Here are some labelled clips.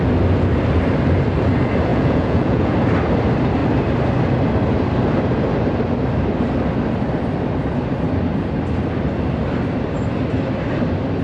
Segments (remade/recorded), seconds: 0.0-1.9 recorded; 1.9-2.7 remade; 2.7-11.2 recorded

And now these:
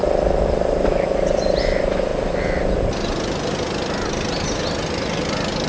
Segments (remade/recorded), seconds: 0.0-5.7 recorded

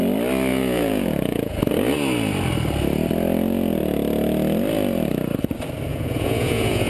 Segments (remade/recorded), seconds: 0.0-0.5 recorded; 0.5-1.6 remade; 1.6-5.9 recorded; 5.9-6.9 remade